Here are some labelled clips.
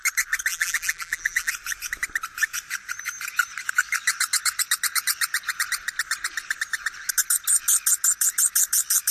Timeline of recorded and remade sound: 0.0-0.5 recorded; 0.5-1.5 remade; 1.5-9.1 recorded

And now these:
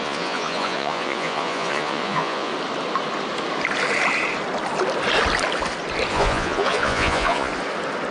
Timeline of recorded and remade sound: 0.0-2.5 remade; 2.5-6.1 recorded; 6.1-7.5 remade; 7.5-8.1 recorded

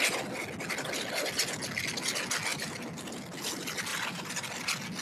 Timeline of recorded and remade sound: 0.0-2.5 recorded; 2.5-3.0 remade; 3.0-3.9 recorded; 3.9-4.5 remade; 4.5-5.0 recorded

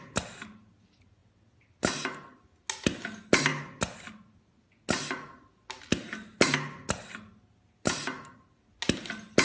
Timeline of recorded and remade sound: 0.0-9.4 recorded